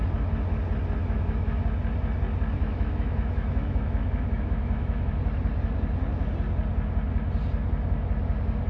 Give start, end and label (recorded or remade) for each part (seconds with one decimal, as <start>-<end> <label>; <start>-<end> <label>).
0.0-1.0 recorded; 1.0-1.6 remade; 1.6-2.6 recorded; 2.6-5.1 remade; 5.1-8.7 recorded